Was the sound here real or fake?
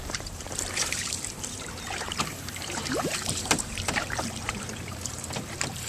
fake